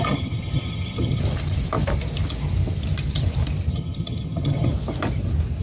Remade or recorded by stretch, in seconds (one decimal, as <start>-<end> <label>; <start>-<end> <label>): 0.0-1.2 remade; 1.2-3.7 recorded; 3.7-4.7 remade; 4.7-5.6 recorded